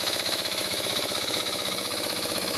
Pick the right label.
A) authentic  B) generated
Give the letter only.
B